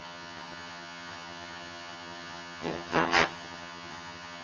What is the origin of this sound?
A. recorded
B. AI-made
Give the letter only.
B